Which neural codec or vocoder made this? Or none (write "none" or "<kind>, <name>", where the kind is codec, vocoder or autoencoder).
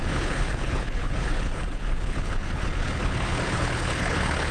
codec, HILCodec